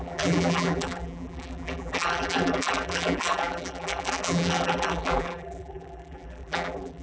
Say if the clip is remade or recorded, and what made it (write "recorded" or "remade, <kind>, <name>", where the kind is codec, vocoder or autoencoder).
remade, vocoder, BigVGAN v2